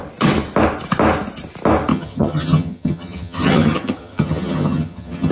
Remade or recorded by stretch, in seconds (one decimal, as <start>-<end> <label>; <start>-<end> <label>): 0.0-1.9 recorded; 1.9-5.3 remade